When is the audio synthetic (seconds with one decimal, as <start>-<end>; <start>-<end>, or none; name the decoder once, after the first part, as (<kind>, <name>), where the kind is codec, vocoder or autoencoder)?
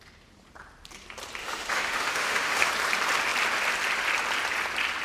1.4-2.7 (autoencoder, DAC-VAE)